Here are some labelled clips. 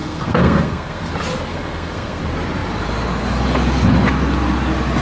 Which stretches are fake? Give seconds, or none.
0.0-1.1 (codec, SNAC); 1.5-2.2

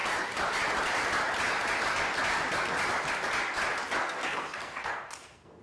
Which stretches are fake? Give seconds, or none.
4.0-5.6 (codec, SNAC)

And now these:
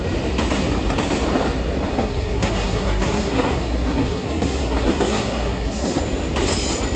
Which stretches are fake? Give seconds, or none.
1.9-6.0 (codec, SNAC)

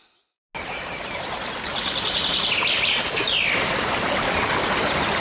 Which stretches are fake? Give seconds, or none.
none

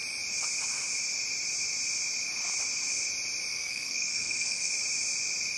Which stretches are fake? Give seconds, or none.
3.5-4.7 (codec, SNAC)

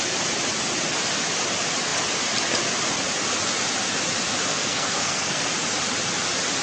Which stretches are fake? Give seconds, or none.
4.5-5.5 (codec, SNAC)

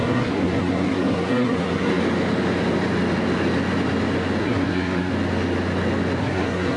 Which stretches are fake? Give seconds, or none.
0.0-2.0 (codec, SNAC); 4.4-5.1; 6.2-6.8